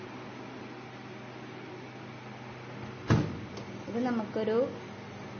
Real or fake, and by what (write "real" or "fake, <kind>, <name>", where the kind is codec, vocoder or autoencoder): real